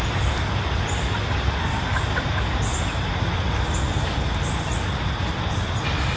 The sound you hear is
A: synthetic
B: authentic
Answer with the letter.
B